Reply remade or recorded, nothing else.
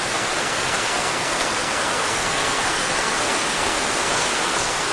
remade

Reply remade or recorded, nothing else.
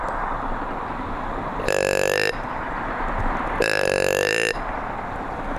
recorded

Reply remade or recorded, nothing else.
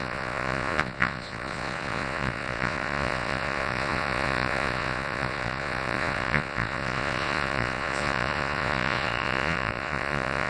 remade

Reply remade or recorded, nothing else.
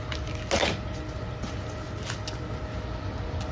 recorded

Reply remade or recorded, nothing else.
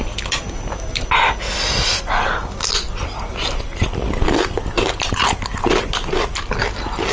recorded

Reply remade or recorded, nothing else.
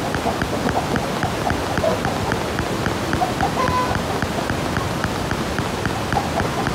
recorded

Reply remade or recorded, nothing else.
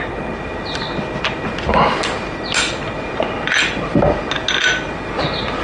recorded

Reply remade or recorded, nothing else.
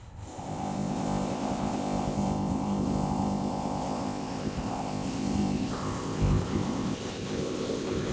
remade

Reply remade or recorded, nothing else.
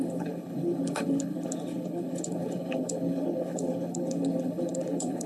remade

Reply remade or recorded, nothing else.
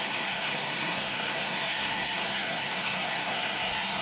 remade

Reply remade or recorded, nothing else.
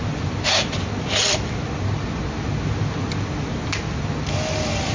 recorded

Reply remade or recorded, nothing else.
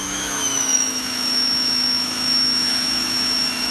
remade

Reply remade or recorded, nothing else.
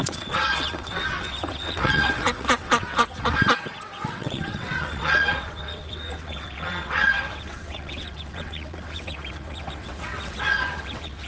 remade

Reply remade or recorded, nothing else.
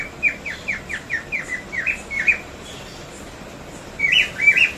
recorded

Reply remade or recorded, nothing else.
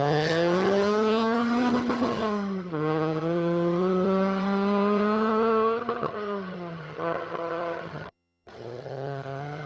remade